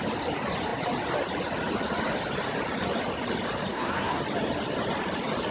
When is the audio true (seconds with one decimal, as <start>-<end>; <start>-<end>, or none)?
0.0-3.7; 4.2-5.5